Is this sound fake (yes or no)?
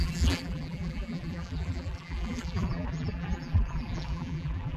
yes